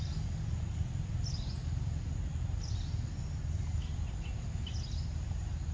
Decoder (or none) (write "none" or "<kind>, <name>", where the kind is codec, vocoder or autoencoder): none